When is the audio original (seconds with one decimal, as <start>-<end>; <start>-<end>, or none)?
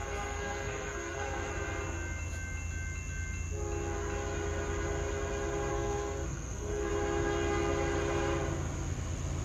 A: 1.5-5.7; 6.9-9.4